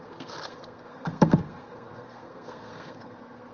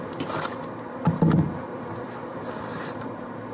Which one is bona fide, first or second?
second